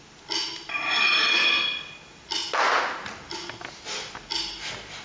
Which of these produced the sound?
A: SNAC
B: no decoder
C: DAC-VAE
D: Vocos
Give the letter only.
B